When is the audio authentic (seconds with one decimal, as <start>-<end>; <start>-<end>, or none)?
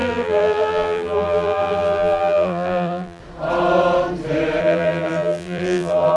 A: 3.2-4.6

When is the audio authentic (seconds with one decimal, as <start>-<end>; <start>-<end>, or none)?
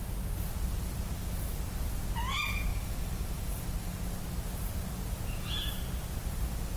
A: 0.0-2.7; 3.9-6.8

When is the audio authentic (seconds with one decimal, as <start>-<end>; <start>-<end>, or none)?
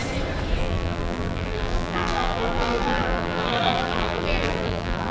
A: 0.0-0.6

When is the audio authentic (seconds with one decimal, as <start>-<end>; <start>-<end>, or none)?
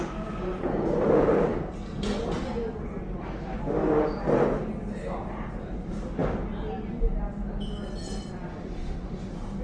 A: 0.0-9.6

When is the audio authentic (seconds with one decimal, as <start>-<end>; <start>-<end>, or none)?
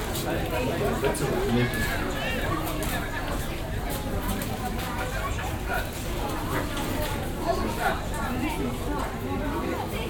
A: 0.0-10.1